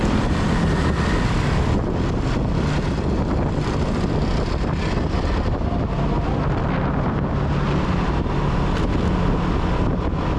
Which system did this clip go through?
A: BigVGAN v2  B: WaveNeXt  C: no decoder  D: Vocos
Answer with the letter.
C